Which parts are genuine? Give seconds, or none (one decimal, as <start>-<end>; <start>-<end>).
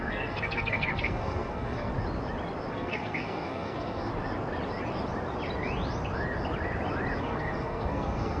1.9-2.7; 4.1-7.2